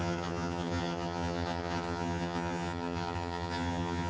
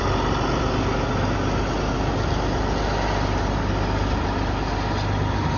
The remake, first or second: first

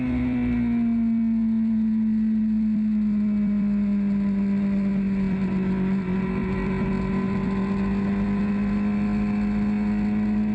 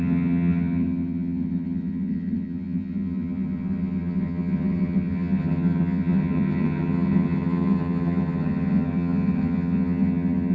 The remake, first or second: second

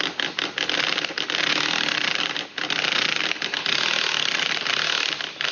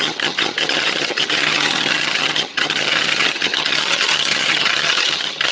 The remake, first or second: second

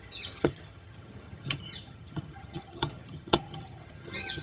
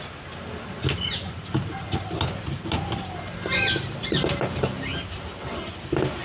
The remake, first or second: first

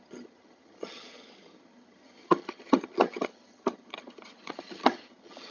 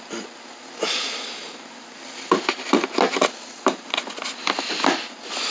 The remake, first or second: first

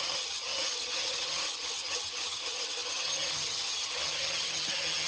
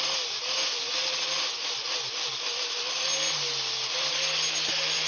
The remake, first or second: first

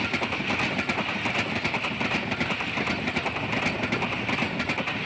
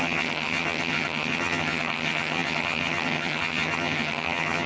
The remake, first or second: second